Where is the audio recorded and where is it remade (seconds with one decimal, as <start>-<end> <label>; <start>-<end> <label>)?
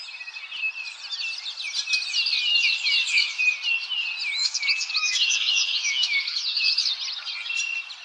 0.0-2.5 recorded; 2.5-3.4 remade; 3.4-4.4 recorded; 4.4-6.9 remade; 6.9-8.0 recorded